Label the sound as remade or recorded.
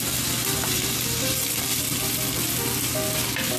recorded